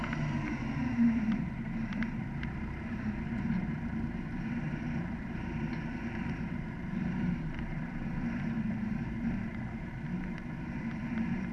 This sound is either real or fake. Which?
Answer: fake